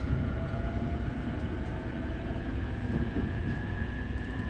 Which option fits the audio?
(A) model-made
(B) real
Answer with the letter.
A